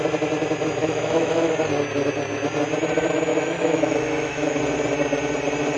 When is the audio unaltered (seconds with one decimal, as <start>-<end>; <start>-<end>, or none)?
0.0-0.8; 1.5-3.3; 4.6-5.8